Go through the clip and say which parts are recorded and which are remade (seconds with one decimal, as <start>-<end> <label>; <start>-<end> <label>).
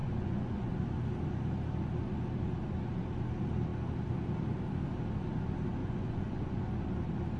0.0-0.7 remade; 0.7-5.8 recorded; 5.8-6.7 remade; 6.7-7.4 recorded